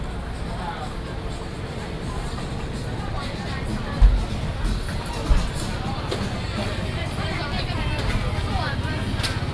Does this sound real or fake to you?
real